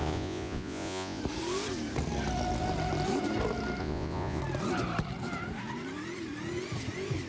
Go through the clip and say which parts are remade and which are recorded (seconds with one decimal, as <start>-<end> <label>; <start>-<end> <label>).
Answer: 0.0-1.2 remade; 1.2-3.8 recorded; 3.8-4.4 remade; 4.4-7.3 recorded